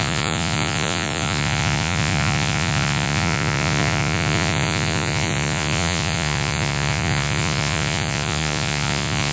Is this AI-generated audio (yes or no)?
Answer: yes